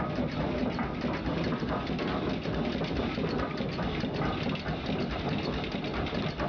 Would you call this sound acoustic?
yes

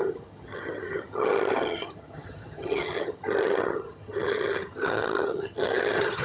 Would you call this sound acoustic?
no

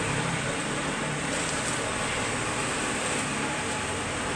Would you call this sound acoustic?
yes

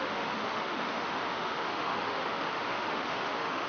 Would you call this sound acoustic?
no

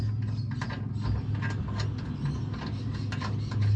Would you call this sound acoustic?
yes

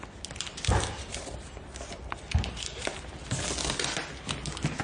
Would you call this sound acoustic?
yes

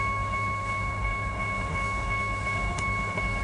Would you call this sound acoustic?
no